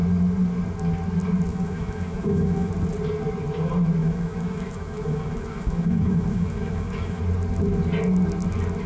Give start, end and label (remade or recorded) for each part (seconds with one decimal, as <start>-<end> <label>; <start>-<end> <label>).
0.0-1.5 recorded; 1.5-2.7 remade; 2.7-4.0 recorded; 4.0-7.2 remade; 7.2-8.9 recorded